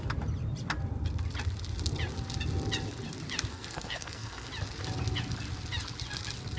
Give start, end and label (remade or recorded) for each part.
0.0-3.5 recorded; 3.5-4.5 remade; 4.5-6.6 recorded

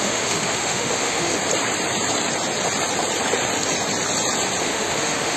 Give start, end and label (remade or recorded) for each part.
0.0-1.4 remade; 1.4-4.6 recorded; 4.6-5.4 remade

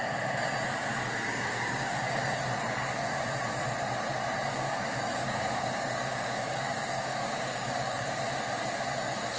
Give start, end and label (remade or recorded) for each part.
0.0-0.9 recorded; 0.9-2.4 remade; 2.4-4.5 recorded; 4.5-8.2 remade; 8.2-9.4 recorded

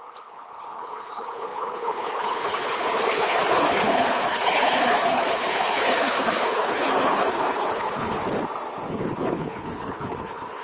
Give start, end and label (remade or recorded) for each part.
0.0-8.2 remade; 8.2-8.9 recorded; 8.9-10.6 remade

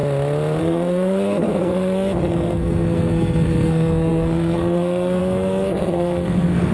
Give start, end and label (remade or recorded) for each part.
0.0-0.6 recorded; 0.6-6.7 remade